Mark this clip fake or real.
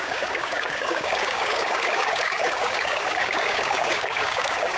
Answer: fake